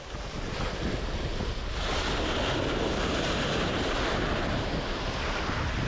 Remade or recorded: recorded